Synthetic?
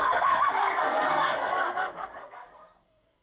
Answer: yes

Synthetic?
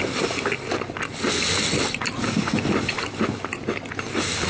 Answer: no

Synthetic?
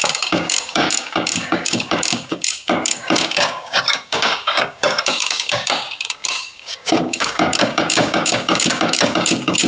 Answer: yes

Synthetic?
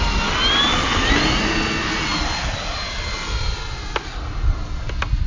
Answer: no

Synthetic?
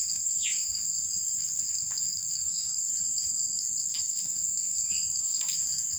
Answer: yes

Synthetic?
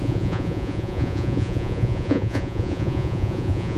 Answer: yes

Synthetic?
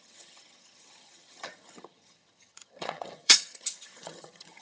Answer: yes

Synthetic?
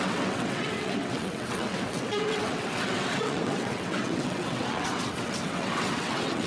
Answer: yes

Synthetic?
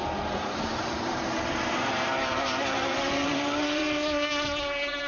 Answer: yes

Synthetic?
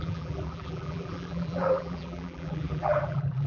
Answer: yes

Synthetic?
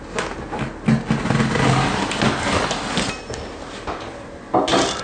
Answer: no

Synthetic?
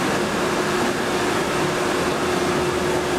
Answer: no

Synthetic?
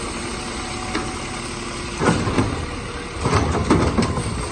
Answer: no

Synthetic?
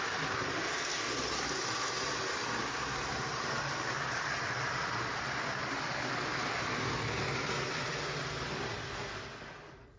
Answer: no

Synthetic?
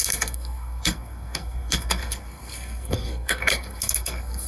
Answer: yes